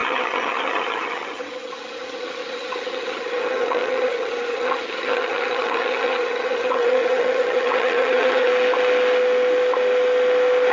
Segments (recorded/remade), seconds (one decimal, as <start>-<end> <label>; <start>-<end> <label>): 0.0-8.5 remade; 8.5-10.7 recorded